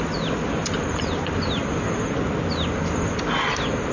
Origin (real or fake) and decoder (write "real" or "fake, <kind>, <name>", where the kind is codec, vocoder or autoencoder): real